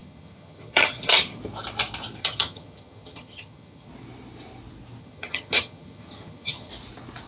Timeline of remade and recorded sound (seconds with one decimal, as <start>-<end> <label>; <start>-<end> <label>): 0.0-1.4 remade; 1.4-2.2 recorded; 2.2-3.9 remade; 3.9-5.0 recorded; 5.0-6.7 remade; 6.7-7.3 recorded